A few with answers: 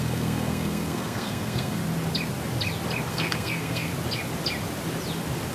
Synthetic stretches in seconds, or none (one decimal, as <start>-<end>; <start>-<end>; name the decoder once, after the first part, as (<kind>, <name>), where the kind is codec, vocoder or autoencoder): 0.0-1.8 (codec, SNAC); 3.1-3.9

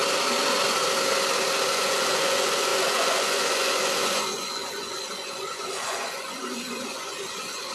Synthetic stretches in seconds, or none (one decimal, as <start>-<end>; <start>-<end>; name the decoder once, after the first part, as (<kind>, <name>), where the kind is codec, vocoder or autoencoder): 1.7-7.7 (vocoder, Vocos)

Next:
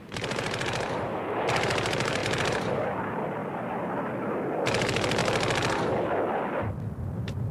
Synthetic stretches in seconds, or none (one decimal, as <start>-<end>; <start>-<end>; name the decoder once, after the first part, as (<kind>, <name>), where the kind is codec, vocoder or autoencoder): 0.0-3.4 (vocoder, BigVGAN v2); 4.2-5.2; 7.0-7.5